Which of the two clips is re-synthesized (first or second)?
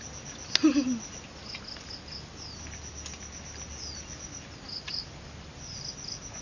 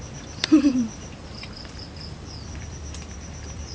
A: second